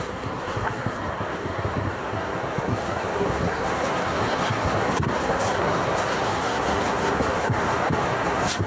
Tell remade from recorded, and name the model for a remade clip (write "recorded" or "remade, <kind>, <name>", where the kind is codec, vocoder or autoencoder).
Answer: remade, codec, SNAC